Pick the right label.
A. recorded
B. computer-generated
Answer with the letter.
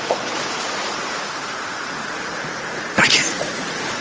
B